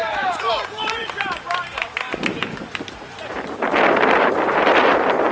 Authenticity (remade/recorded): remade